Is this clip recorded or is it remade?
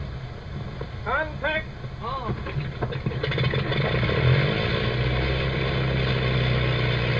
recorded